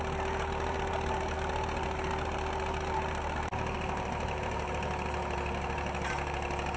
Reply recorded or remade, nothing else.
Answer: recorded